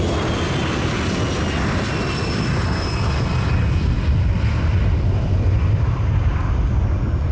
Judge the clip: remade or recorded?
recorded